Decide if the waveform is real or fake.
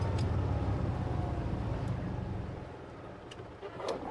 real